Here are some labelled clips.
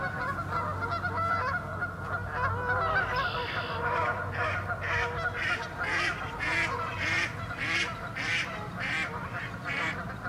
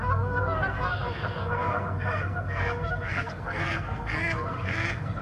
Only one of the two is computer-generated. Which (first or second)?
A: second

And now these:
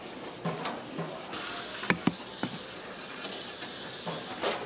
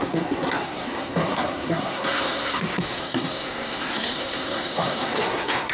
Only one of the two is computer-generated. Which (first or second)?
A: second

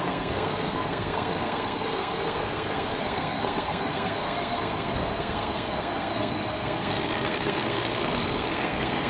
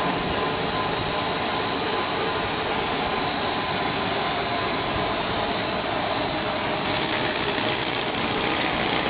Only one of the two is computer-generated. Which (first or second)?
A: first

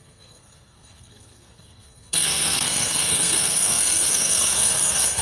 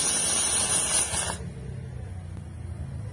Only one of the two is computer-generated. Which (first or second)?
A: first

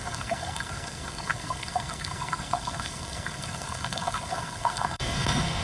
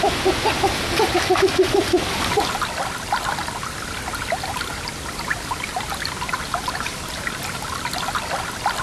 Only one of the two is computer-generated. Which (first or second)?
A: first